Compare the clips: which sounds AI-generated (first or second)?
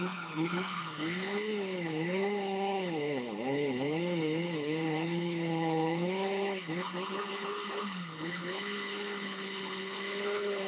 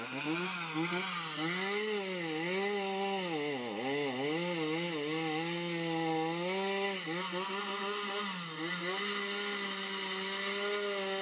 first